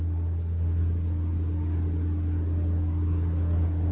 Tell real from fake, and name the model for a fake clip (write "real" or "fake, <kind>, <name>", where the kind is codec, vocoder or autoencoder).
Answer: real